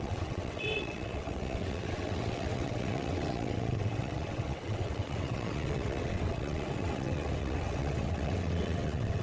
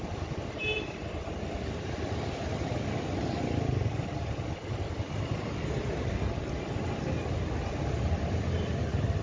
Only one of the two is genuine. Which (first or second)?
second